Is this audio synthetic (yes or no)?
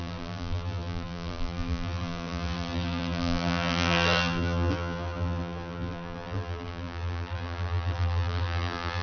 yes